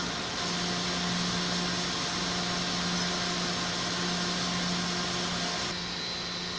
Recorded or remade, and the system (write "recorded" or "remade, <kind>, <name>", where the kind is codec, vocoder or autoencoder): recorded